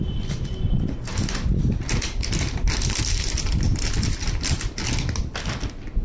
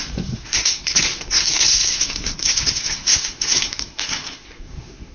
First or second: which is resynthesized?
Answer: second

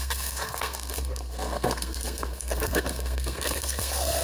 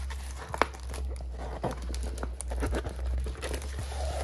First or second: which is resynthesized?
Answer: first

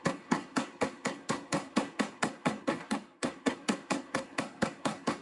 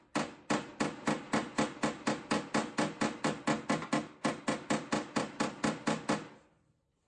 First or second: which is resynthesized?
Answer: first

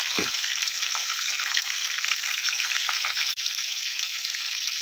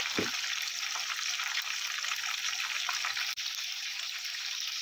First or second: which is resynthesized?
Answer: first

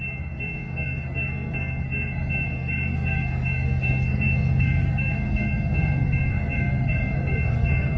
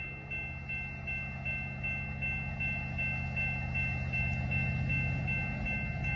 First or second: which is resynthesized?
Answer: first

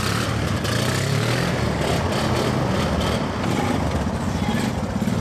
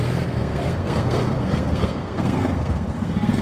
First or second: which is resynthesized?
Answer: second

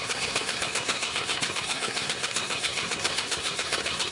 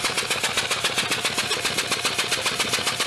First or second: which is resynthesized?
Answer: first